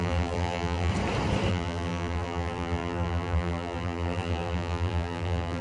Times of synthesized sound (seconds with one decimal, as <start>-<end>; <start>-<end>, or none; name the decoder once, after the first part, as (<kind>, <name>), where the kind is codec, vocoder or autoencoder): 0.0-0.9 (vocoder, BigVGAN v2); 1.5-5.6